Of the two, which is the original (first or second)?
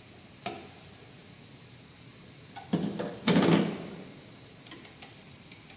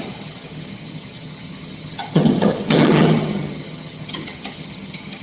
first